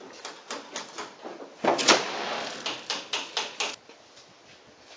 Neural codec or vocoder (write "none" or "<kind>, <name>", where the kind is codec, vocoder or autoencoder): none